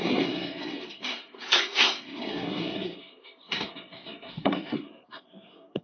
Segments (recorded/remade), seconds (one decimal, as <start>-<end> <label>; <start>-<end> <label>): 0.0-5.8 remade